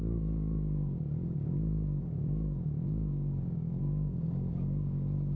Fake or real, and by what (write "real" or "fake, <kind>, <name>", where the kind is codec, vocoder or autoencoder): fake, codec, DAC